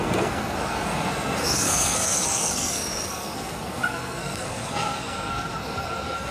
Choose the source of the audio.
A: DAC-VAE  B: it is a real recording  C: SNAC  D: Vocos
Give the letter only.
C